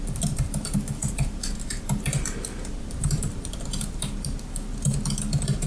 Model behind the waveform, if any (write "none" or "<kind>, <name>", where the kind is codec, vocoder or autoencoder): vocoder, BigVGAN v2